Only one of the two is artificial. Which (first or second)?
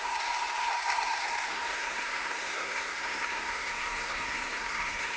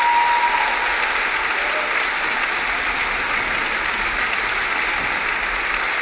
first